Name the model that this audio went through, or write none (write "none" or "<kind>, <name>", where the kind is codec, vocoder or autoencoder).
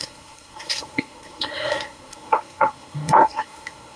codec, SNAC